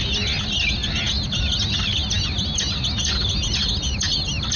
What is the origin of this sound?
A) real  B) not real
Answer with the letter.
A